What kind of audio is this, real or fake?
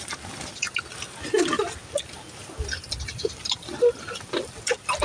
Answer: real